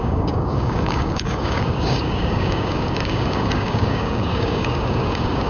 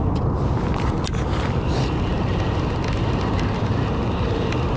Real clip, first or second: second